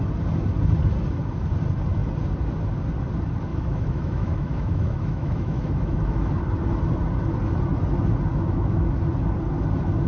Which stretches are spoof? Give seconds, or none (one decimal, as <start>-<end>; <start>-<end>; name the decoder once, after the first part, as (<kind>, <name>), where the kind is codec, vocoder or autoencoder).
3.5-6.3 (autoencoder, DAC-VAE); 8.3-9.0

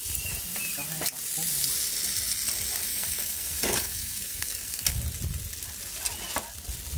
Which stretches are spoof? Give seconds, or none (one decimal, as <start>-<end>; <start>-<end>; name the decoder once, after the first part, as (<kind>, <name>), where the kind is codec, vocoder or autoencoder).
2.9-5.0 (codec, SNAC)

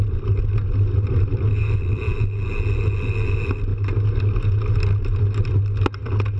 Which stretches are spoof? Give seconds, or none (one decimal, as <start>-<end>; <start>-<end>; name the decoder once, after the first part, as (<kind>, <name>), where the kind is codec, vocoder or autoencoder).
none

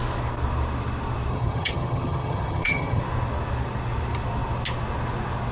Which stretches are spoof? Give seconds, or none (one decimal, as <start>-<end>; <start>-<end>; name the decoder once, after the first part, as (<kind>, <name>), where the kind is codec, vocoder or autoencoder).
1.3-3.0 (vocoder, HiFi-GAN)

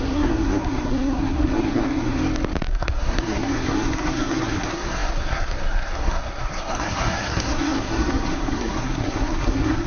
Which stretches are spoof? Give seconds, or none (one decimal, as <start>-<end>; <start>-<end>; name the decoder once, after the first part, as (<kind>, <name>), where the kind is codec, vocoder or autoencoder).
0.0-2.2 (codec, SNAC); 2.7-9.9